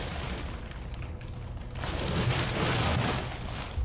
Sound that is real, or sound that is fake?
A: real